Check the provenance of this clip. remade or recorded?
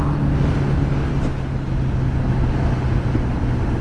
recorded